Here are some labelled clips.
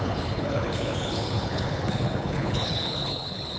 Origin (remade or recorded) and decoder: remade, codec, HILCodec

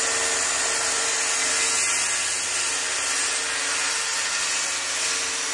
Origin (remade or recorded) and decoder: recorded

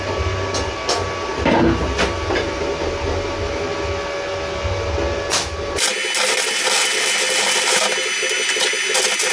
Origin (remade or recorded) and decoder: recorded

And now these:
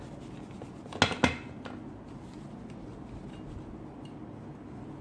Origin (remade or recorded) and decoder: recorded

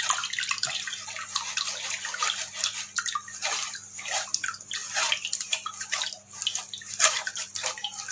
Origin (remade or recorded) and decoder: recorded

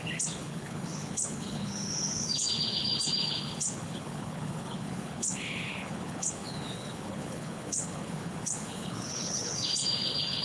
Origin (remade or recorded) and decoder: remade, codec, HILCodec